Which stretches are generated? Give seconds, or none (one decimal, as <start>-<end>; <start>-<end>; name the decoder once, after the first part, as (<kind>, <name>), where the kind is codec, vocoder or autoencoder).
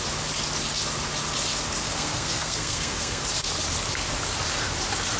1.8-3.2 (codec, SNAC)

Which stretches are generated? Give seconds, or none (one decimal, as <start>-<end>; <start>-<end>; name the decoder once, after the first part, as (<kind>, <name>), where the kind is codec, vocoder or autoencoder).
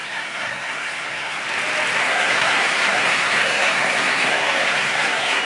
0.0-1.4 (codec, SNAC); 2.0-5.4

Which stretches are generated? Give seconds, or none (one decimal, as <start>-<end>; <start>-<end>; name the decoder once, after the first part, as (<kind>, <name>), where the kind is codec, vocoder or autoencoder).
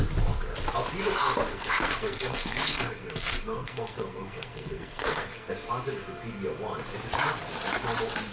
1.5-5.5 (codec, SNAC)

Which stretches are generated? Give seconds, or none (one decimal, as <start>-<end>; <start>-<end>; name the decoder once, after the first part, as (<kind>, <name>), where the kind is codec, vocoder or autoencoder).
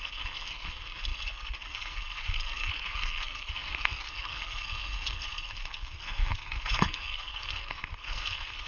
0.0-8.7 (codec, SNAC)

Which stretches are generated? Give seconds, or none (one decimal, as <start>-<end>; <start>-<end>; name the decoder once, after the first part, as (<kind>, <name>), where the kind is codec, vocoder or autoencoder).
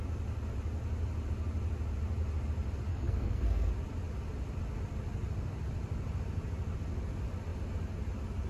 2.9-3.7 (codec, SNAC)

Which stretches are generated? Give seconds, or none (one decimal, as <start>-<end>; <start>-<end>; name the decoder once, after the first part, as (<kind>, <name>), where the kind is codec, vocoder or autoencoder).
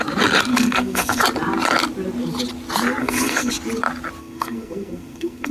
0.5-1.2 (codec, SNAC); 3.0-3.5; 4.2-5.5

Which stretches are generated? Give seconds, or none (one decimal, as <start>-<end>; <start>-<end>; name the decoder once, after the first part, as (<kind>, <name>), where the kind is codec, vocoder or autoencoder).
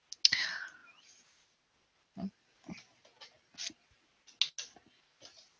none